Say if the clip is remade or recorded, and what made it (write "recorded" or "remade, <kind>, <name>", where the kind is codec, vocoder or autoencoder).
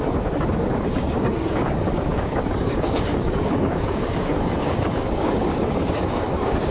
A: remade, codec, DAC